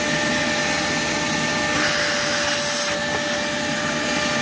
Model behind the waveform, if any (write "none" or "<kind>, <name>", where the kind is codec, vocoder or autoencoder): none